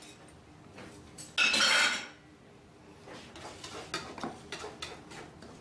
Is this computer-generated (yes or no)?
no